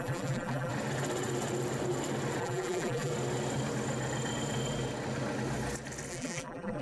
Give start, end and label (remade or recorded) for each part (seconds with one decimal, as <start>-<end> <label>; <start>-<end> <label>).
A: 0.0-0.7 remade; 0.7-2.4 recorded; 2.4-3.1 remade; 3.1-6.1 recorded; 6.1-6.8 remade